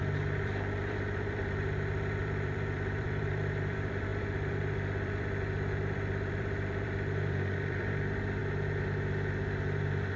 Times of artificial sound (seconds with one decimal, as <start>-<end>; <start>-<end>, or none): 0.0-8.4